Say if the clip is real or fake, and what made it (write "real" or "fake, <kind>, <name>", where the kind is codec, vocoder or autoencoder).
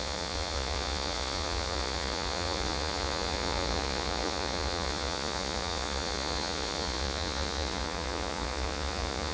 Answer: fake, vocoder, Vocos